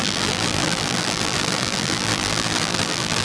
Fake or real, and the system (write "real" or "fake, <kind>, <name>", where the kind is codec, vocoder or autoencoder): fake, vocoder, BigVGAN v2